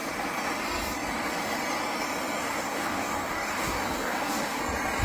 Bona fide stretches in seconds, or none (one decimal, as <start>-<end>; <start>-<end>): 0.0-2.4; 4.6-5.0